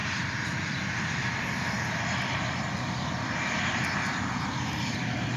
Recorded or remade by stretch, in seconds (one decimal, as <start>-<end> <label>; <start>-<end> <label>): 0.0-5.4 remade